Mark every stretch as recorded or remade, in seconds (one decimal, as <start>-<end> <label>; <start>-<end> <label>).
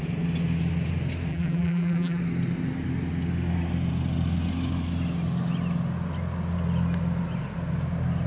0.0-1.3 recorded; 1.3-2.2 remade; 2.2-8.3 recorded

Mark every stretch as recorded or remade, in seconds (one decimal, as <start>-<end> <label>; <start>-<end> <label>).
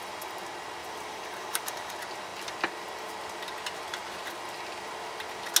0.0-0.8 recorded; 0.8-1.9 remade; 1.9-5.6 recorded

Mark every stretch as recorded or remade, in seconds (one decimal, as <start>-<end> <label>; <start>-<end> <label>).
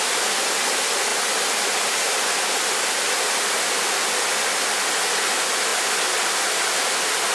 0.0-7.3 recorded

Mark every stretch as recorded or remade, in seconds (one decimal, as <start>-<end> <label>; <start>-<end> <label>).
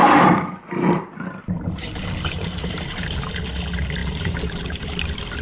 0.0-3.2 remade; 3.2-4.0 recorded; 4.0-5.0 remade; 5.0-5.4 recorded